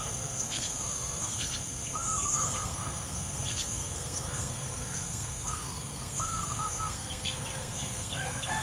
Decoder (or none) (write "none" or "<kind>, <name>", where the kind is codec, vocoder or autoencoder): codec, SNAC